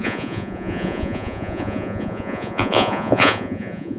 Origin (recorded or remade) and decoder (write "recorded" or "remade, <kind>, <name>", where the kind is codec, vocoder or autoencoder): remade, vocoder, Vocos